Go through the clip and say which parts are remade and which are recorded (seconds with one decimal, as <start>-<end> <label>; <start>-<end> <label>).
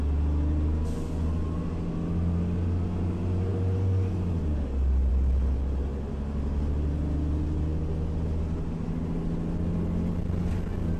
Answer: 0.0-11.0 recorded